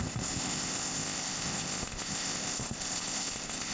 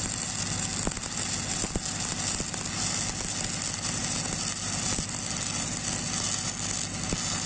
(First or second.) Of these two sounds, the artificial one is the first